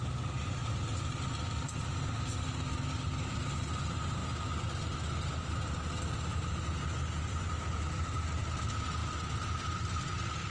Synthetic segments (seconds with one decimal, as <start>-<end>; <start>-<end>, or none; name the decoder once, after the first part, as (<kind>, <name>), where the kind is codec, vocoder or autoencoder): none